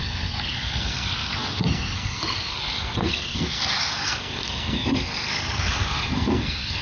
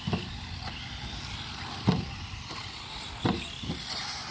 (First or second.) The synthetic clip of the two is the first